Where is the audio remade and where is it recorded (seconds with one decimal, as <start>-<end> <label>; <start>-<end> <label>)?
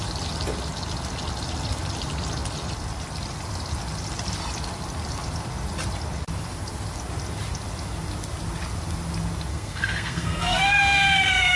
0.0-9.5 recorded; 9.5-11.6 remade